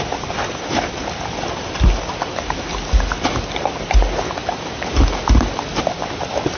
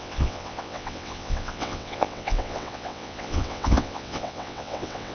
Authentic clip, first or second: first